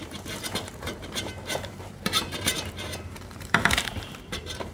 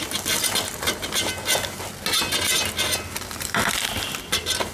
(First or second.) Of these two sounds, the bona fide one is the second